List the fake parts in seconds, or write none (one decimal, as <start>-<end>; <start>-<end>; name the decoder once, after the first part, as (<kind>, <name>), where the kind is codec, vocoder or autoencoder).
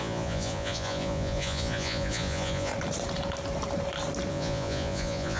0.0-2.7 (vocoder, Vocos); 4.3-5.4